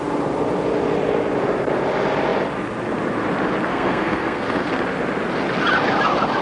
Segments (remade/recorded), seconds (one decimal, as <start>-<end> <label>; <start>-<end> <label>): 0.0-3.7 recorded; 3.7-4.7 remade; 4.7-6.4 recorded